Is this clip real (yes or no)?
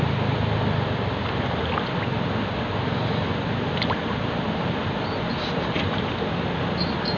yes